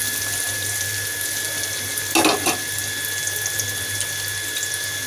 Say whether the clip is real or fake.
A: real